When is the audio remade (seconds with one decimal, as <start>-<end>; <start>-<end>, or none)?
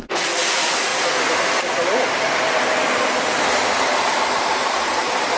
none